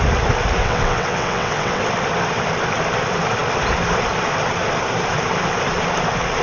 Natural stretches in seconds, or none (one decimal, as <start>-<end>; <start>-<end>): 0.0-0.6; 1.8-6.4

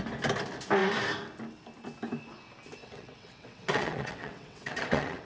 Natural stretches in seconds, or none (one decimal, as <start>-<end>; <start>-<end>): 0.0-2.8

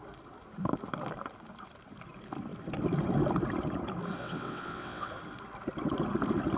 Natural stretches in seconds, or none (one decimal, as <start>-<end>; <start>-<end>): 0.0-4.2; 5.1-6.6

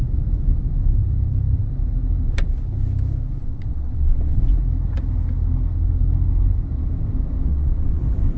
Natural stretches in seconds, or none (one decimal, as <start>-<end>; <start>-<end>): 0.0-3.4; 4.4-7.5; 8.0-8.4

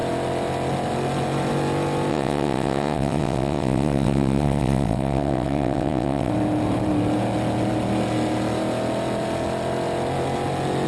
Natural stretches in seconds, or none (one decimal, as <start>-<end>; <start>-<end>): 0.0-2.1; 6.3-10.9